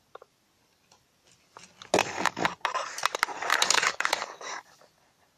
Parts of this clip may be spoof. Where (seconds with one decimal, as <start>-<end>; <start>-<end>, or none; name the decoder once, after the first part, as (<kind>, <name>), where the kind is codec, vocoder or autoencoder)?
2.0-2.5 (codec, DAC); 3.5-4.8